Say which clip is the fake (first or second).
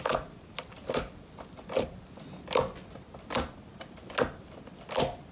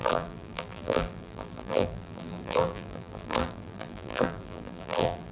second